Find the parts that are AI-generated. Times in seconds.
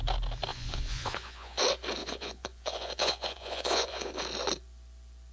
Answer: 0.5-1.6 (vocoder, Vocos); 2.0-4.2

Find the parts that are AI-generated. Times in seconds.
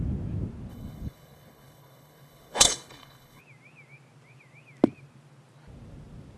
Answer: 0.7-3.4 (codec, HILCodec)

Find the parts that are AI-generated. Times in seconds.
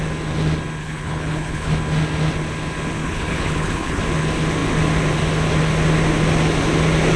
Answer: 0.8-1.7 (codec, HILCodec); 3.0-4.0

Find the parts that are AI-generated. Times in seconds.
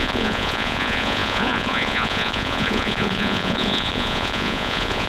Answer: 0.0-5.1 (vocoder, Vocos)